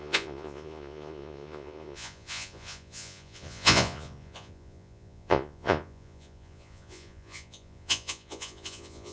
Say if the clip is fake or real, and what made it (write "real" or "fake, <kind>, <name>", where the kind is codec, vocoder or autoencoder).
fake, vocoder, Vocos